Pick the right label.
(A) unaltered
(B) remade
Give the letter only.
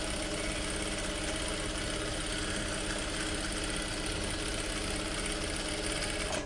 A